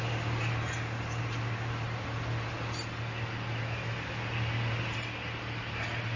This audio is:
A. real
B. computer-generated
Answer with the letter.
A